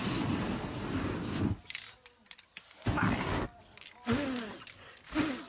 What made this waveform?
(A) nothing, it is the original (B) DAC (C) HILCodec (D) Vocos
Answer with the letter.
A